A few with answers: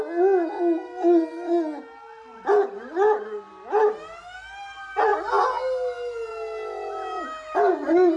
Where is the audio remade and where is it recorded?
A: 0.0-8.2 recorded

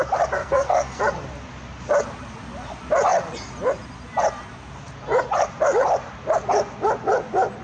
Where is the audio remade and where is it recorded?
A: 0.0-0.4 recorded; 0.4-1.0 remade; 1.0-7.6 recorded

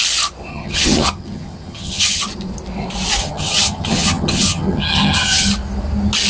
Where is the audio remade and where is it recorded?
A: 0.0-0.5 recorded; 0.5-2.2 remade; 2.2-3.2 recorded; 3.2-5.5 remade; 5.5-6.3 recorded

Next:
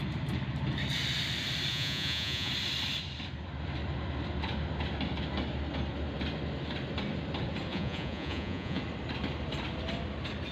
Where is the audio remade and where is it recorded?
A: 0.0-1.7 recorded; 1.7-2.5 remade; 2.5-7.7 recorded; 7.7-8.8 remade; 8.8-10.5 recorded

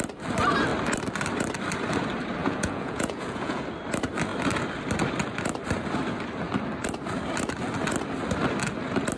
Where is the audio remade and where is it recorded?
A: 0.0-2.4 recorded; 2.4-3.6 remade; 3.6-9.2 recorded

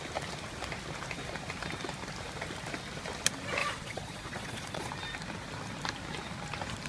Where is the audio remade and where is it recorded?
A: 0.0-3.6 recorded; 3.6-4.9 remade; 4.9-6.9 recorded

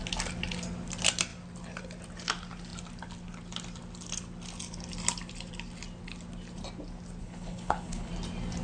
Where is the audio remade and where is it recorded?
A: 0.0-7.2 recorded; 7.2-8.1 remade; 8.1-8.6 recorded